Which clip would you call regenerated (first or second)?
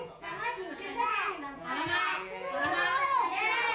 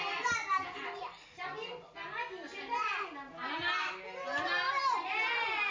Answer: first